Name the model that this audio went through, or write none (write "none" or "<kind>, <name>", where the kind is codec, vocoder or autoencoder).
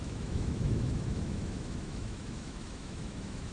autoencoder, DAC-VAE